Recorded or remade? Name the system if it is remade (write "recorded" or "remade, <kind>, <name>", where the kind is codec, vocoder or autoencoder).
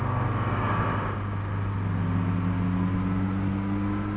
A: recorded